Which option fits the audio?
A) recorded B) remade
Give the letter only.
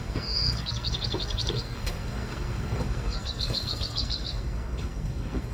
B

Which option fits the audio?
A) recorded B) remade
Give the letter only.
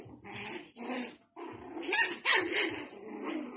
A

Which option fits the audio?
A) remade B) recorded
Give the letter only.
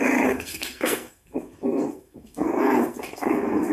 A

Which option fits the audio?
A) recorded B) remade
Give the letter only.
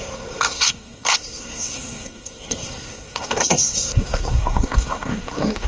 B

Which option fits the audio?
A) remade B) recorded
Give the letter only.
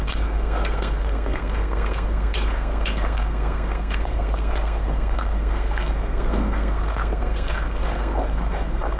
A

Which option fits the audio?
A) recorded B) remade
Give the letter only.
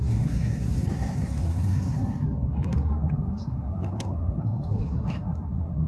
B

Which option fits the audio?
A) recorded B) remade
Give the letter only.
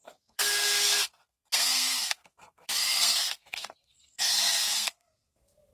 B